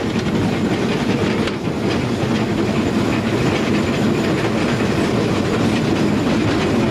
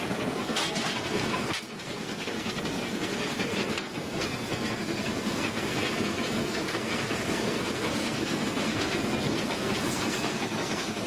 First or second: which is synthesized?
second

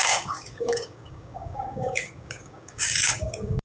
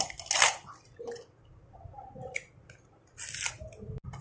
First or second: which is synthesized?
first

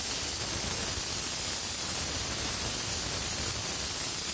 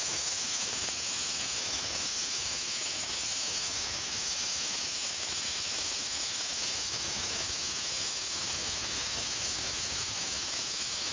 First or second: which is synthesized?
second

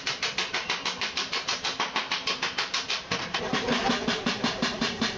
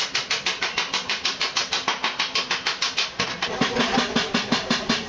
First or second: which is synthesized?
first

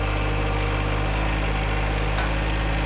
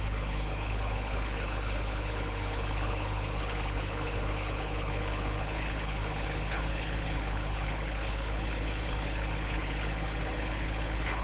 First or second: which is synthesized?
second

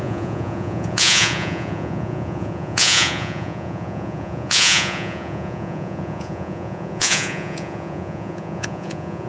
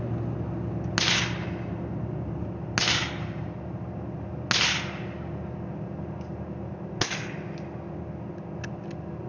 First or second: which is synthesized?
first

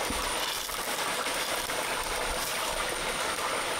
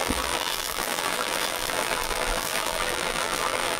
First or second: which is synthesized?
second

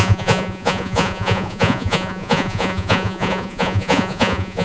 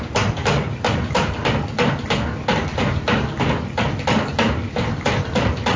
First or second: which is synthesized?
first